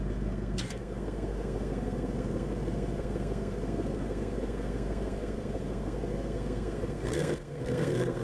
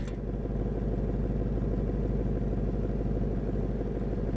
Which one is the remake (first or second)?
first